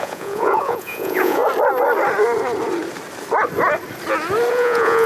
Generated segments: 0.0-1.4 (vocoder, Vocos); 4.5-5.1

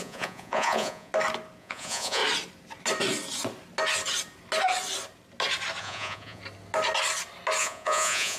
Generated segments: 0.0-1.1 (vocoder, Vocos); 1.6-2.2; 5.8-6.4; 7.6-8.4

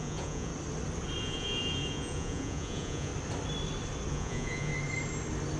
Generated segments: 0.0-0.5 (vocoder, Vocos); 1.2-3.1; 4.1-4.7

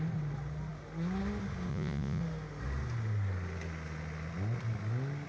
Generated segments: 1.7-2.2 (vocoder, Vocos)